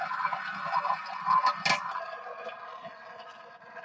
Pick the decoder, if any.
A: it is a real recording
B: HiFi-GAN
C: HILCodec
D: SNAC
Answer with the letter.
A